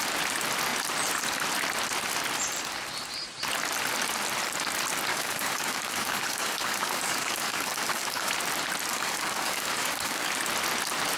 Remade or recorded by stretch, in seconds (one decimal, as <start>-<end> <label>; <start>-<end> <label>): 0.0-5.1 recorded; 5.1-8.3 remade; 8.3-8.9 recorded; 8.9-10.3 remade; 10.3-11.2 recorded